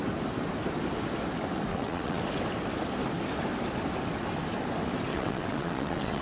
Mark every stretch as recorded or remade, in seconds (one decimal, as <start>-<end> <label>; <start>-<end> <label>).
0.0-1.7 recorded; 1.7-2.2 remade; 2.2-5.1 recorded; 5.1-6.2 remade